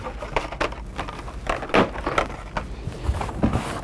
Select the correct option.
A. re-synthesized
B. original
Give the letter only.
B